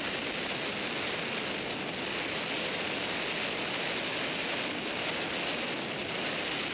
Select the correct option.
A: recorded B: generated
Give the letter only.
A